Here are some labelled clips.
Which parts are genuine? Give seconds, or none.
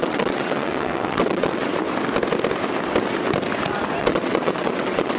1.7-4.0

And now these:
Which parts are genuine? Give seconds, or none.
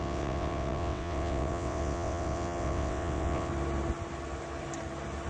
3.5-5.3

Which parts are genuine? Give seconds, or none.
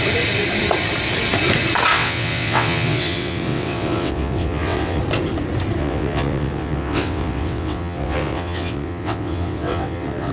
0.0-1.9; 5.0-5.8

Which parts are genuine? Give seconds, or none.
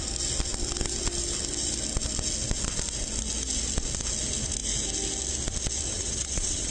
0.0-5.9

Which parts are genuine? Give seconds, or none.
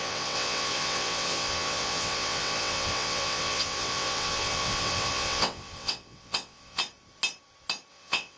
6.8-7.9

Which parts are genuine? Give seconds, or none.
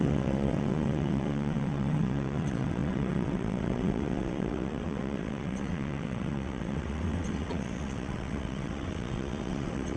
none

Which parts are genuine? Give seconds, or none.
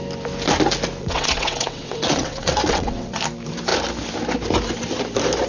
0.0-1.0; 3.2-5.5